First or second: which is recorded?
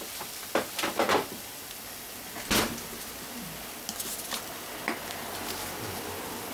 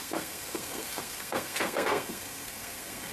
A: first